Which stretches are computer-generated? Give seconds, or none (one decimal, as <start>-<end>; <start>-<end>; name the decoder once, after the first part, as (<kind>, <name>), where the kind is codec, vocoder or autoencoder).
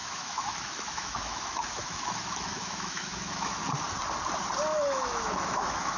0.0-3.6 (autoencoder, DAC-VAE); 4.7-6.0